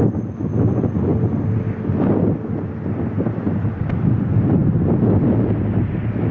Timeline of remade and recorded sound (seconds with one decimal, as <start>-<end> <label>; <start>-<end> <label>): 0.0-6.3 recorded